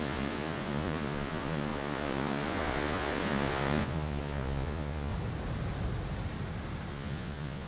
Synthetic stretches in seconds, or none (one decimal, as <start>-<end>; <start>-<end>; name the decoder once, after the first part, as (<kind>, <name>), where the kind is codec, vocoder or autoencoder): 0.0-5.1 (vocoder, Vocos); 6.9-7.7